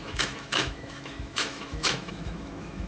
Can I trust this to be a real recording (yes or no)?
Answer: no